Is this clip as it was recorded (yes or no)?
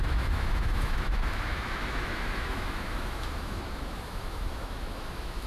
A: no